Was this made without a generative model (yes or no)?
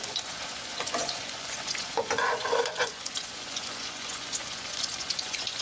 no